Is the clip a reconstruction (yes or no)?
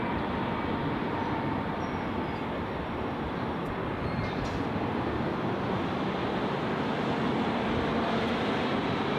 yes